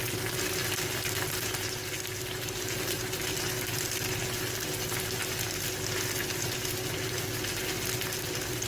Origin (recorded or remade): recorded